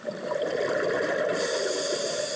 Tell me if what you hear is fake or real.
real